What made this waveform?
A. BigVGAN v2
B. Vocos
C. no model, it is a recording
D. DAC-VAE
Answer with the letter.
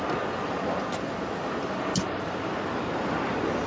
C